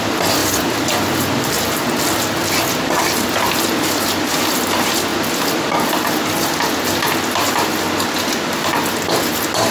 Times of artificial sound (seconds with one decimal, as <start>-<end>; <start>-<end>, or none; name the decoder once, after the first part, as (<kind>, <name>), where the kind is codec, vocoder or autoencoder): none